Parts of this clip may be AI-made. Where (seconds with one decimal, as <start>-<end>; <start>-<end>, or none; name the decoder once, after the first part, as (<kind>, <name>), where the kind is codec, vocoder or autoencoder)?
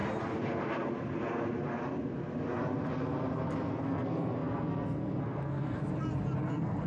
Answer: 3.7-5.8 (codec, SNAC); 6.5-6.9